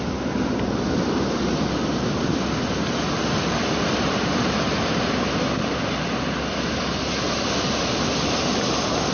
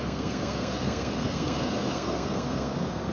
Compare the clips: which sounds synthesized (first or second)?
second